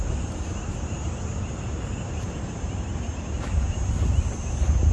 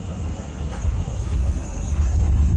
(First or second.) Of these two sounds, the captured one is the first